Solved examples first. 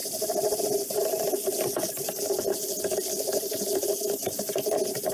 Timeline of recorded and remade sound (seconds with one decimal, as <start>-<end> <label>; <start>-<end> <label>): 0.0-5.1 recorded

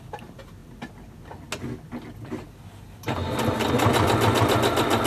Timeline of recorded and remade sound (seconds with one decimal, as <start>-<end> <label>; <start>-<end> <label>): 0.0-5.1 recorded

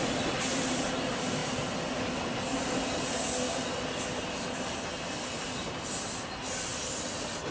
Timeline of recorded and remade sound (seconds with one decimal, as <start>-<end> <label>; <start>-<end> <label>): 0.0-7.5 recorded

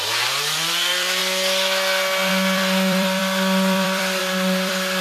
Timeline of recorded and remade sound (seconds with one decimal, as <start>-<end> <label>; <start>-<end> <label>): 0.0-1.2 remade; 1.2-2.3 recorded; 2.3-5.0 remade

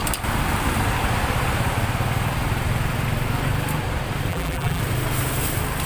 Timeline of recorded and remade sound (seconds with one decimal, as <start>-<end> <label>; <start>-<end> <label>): 0.0-4.3 recorded; 4.3-4.8 remade; 4.8-5.9 recorded

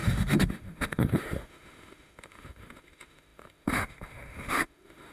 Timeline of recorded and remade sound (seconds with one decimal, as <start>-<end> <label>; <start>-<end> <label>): 0.0-5.1 remade